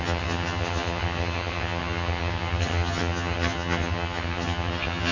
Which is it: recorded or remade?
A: remade